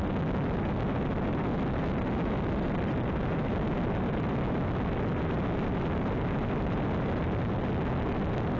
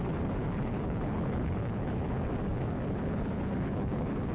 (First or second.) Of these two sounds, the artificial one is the second